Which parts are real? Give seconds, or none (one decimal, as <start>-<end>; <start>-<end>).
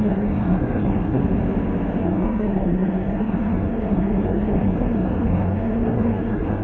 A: 1.2-2.0